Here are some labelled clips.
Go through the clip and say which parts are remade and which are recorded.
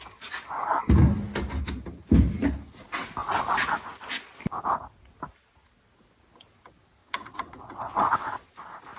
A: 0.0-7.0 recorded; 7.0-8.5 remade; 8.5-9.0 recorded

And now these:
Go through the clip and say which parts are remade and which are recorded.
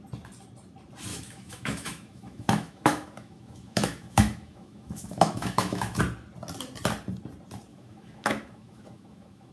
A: 0.0-1.1 recorded; 1.1-6.0 remade; 6.0-7.7 recorded; 7.7-9.5 remade